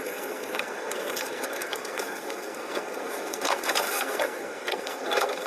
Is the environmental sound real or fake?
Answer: fake